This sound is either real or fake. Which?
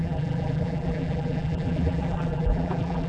fake